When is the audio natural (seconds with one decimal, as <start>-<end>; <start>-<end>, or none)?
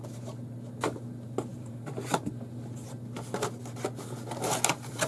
0.0-1.5; 2.3-5.1